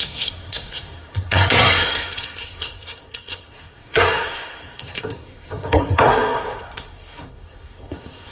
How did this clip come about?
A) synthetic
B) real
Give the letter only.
A